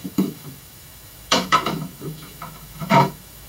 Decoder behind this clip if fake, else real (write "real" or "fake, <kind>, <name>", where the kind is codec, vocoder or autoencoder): fake, autoencoder, DAC-VAE